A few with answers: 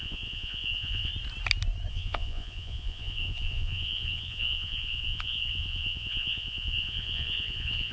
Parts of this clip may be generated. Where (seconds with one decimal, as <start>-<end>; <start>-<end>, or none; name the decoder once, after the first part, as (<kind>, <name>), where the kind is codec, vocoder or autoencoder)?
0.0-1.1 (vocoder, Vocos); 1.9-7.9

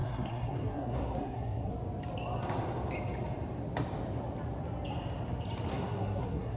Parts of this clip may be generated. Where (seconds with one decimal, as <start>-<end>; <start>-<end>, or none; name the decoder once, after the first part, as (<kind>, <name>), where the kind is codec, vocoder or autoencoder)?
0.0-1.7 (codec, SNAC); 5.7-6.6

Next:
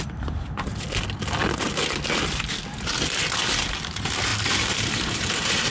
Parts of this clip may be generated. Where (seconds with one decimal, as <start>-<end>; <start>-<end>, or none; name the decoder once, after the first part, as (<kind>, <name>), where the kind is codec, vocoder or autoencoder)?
0.0-0.7 (vocoder, BigVGAN v2); 3.8-5.7

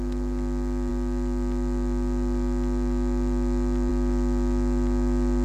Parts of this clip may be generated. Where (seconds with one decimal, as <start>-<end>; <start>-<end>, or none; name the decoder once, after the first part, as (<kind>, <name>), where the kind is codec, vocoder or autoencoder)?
none

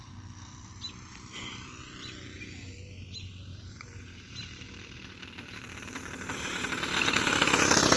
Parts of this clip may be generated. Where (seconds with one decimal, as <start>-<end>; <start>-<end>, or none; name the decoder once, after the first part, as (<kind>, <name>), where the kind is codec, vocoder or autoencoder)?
3.5-6.6 (vocoder, BigVGAN v2)